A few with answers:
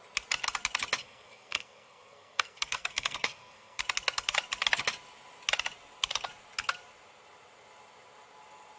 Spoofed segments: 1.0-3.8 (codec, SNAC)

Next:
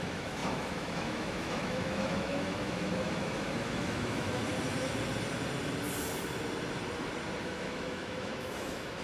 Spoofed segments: 0.0-4.4 (autoencoder, DAC-VAE); 7.4-9.0

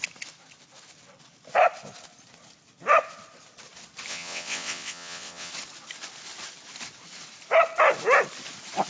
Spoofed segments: 4.1-5.5 (vocoder, WaveNeXt)